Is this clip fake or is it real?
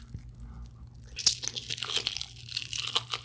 real